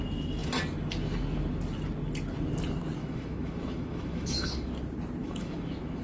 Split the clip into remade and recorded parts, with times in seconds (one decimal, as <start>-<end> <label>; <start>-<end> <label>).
0.0-3.0 recorded; 3.0-4.7 remade; 4.7-5.2 recorded; 5.2-6.0 remade